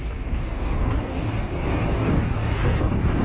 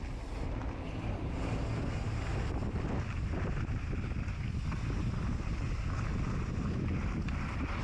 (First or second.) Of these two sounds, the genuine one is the second